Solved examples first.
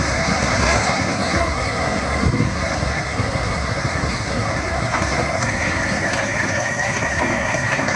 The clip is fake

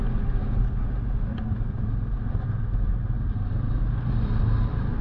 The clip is real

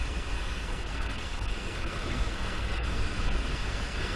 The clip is fake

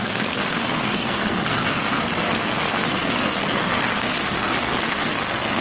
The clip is fake